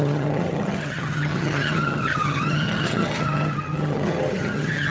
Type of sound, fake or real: fake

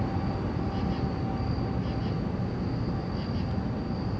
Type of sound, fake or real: real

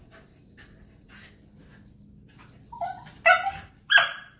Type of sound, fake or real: real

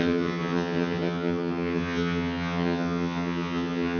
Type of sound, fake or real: fake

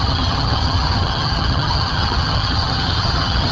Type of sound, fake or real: fake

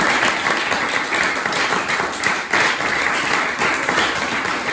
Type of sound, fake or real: real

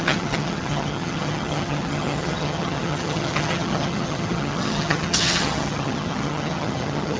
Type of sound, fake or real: fake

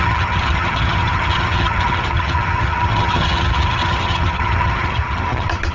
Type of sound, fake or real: fake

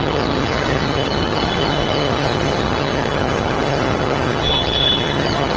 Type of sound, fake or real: fake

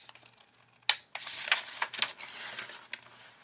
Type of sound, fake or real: real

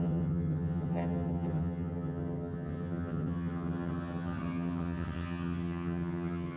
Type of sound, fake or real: fake